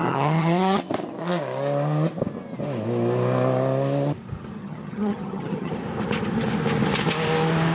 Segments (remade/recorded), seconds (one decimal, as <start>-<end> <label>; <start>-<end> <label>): 0.0-0.8 remade; 0.8-4.6 recorded; 4.6-5.7 remade; 5.7-7.7 recorded